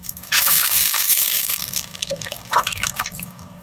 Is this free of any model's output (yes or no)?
no